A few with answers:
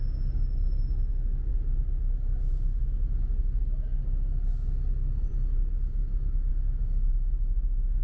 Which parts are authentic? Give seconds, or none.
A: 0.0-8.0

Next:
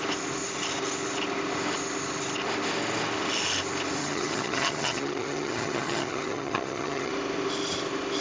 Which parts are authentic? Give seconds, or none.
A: 0.0-4.0; 7.1-8.2

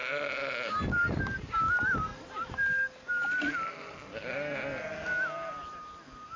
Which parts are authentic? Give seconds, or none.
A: 0.0-6.4

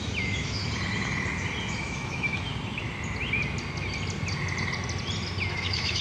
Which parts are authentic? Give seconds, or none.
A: 0.6-1.7; 2.5-5.5

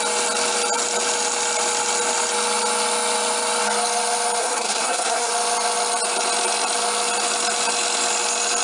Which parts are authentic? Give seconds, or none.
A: 0.0-4.4; 5.3-8.6

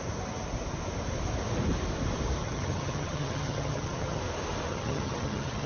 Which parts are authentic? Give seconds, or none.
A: 0.0-2.4; 4.2-4.7

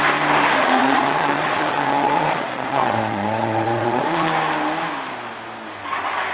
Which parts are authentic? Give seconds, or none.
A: 0.0-0.6; 4.3-6.3

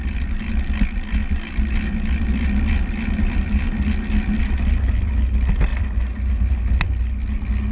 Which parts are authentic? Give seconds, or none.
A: 0.0-7.7